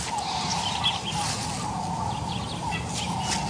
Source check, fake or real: real